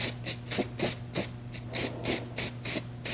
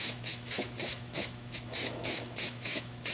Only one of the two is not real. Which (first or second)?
second